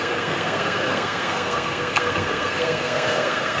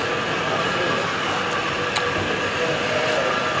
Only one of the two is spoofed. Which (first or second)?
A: first